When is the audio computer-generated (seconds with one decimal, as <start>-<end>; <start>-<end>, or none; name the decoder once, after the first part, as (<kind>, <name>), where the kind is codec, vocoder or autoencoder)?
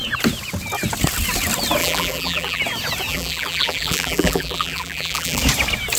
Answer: 1.8-2.6 (vocoder, BigVGAN v2); 3.1-5.4